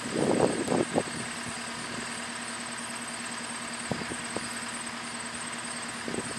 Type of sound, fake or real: real